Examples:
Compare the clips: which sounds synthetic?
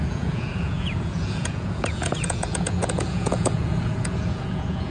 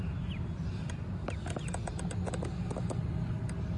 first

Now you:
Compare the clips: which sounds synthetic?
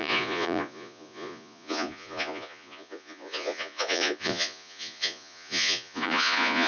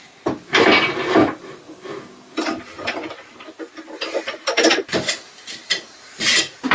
first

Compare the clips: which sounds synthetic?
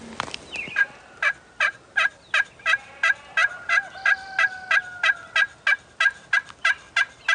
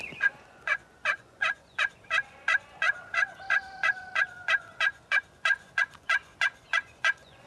second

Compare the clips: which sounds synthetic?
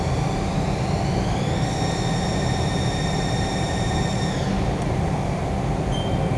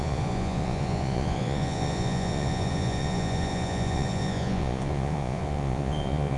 second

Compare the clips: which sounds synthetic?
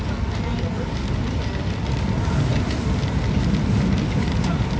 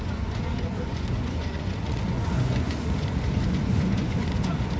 second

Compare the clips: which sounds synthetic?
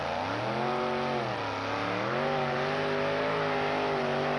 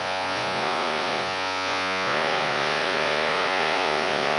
second